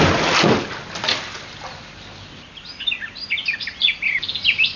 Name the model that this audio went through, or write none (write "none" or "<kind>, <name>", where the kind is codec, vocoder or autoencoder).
none